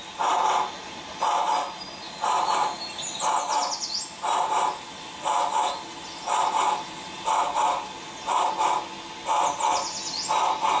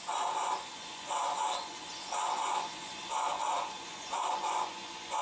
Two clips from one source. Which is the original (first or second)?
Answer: first